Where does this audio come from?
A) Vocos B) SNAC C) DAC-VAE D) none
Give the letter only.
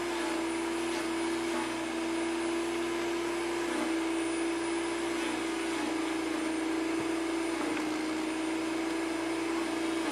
D